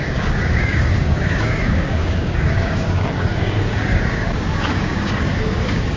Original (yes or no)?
no